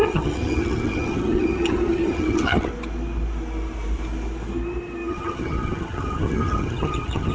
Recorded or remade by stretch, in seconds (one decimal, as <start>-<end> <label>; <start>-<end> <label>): 0.0-2.7 remade; 2.7-5.1 recorded; 5.1-7.3 remade